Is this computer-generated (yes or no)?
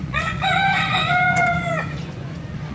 yes